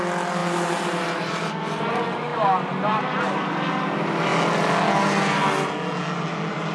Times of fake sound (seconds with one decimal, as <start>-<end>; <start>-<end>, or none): none

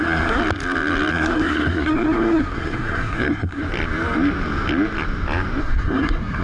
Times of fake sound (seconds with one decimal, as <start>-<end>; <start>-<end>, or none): 0.0-0.4; 1.1-3.6; 5.6-6.4